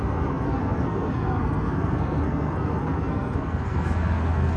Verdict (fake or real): fake